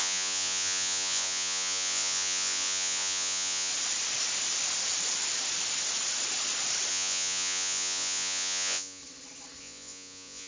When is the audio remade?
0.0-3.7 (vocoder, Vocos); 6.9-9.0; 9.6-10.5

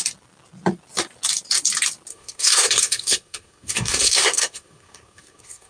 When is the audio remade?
2.1-5.7 (codec, SNAC)

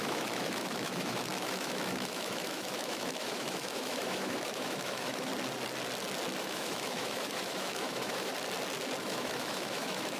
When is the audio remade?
0.0-5.3 (autoencoder, DAC-VAE); 6.4-8.3; 9.0-10.2

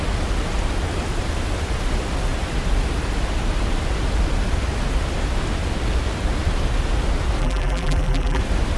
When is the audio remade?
7.4-8.4 (vocoder, BigVGAN v2)

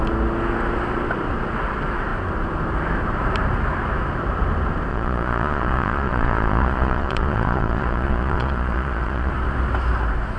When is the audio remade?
4.9-9.3 (vocoder, Vocos)

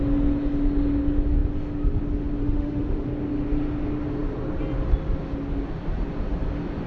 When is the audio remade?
2.4-3.1 (autoencoder, DAC-VAE)